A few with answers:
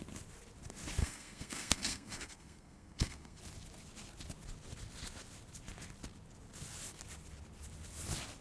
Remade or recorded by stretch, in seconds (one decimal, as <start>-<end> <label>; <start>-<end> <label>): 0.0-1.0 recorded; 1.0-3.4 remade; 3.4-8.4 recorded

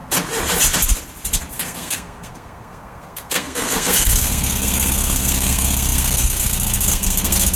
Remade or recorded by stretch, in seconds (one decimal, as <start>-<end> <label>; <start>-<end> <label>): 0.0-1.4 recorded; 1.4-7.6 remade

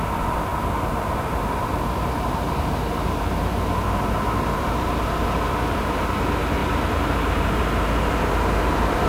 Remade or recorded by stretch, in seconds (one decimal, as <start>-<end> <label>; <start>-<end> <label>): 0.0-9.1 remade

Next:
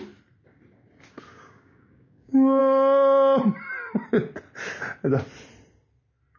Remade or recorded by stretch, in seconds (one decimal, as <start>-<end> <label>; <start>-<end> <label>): 0.0-1.3 recorded; 1.3-2.6 remade; 2.6-6.4 recorded

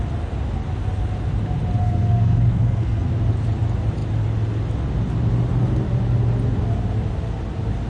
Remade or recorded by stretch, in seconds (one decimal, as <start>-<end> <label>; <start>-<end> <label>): 0.0-1.8 recorded; 1.8-3.1 remade; 3.1-7.9 recorded

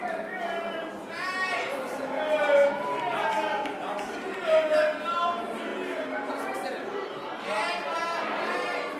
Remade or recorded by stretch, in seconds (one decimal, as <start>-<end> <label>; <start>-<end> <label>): 0.0-9.0 recorded